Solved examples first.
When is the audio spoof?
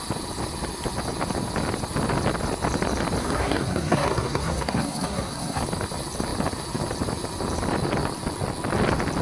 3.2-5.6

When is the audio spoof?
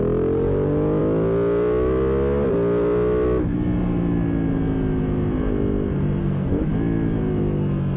6.2-6.7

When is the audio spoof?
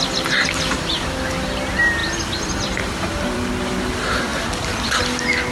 2.0-3.5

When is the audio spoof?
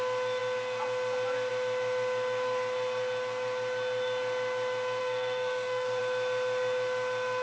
5.0-6.0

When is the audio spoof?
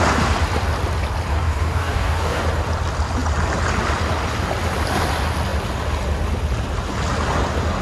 1.3-2.4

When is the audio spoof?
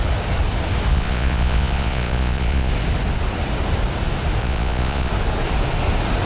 0.9-2.7; 4.4-5.1